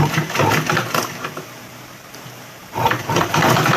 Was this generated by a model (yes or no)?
yes